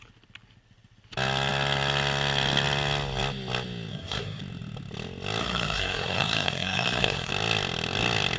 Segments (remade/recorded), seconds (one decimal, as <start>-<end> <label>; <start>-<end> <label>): 0.0-3.9 recorded; 3.9-4.4 remade; 4.4-5.4 recorded; 5.4-7.3 remade; 7.3-8.4 recorded